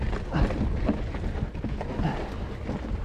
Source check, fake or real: real